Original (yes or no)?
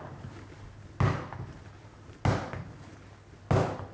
yes